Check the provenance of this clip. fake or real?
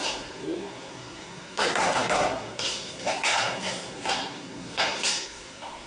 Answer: fake